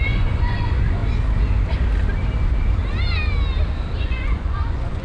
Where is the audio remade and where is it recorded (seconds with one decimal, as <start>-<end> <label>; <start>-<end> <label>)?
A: 0.0-1.0 remade; 1.0-4.0 recorded; 4.0-5.0 remade